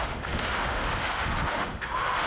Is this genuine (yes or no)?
no